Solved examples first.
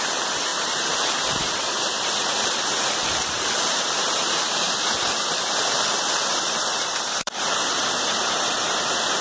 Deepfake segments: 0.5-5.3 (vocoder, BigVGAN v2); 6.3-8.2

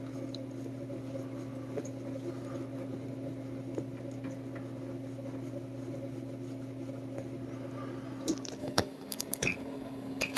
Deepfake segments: 8.6-10.4 (codec, DAC)

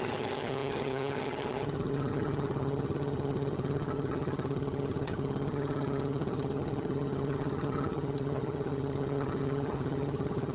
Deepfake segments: 0.0-10.5 (vocoder, HiFi-GAN)

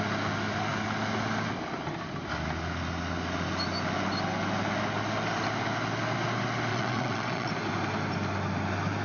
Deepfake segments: 6.7-7.5 (vocoder, WaveNeXt)

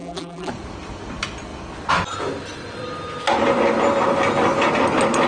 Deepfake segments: 0.0-0.5 (vocoder, BigVGAN v2)

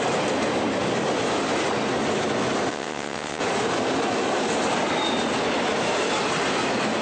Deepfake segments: 2.7-3.4 (vocoder, WaveNeXt)

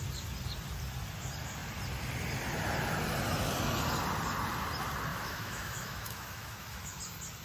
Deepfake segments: 5.1-7.0 (autoencoder, DAC-VAE)

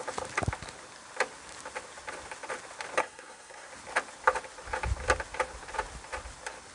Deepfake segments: 3.0-3.7 (codec, SNAC)